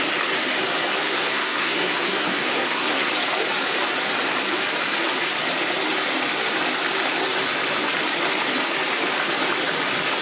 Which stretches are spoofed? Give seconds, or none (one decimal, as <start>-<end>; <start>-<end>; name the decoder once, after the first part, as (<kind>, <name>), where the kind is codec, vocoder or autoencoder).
1.0-3.1 (codec, SNAC)

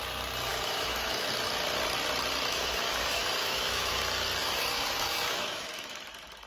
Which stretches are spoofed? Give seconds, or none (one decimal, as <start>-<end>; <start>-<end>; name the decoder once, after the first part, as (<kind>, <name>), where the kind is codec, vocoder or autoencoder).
0.5-1.3 (autoencoder, DAC-VAE); 2.5-4.0; 4.4-6.0

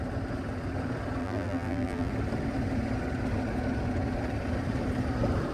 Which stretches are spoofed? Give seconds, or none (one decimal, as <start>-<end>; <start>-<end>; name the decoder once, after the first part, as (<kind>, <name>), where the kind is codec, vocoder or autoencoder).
1.2-2.1 (vocoder, BigVGAN v2)

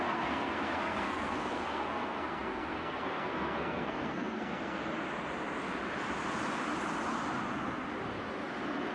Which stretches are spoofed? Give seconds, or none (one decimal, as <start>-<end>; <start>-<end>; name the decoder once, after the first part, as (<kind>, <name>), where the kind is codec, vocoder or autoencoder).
0.0-4.8 (codec, SNAC)

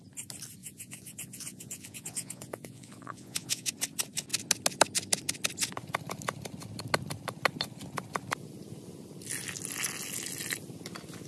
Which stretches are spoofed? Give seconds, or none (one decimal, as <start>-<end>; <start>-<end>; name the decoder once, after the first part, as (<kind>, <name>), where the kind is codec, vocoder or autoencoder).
0.6-3.7 (vocoder, Vocos)

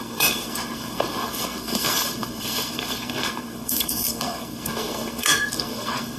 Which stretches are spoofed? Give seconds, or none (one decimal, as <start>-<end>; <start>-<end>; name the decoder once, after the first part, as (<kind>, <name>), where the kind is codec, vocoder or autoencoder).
0.0-6.2 (codec, SNAC)